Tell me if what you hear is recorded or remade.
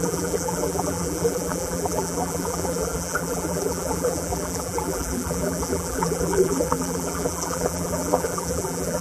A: remade